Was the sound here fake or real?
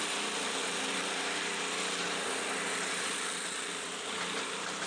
fake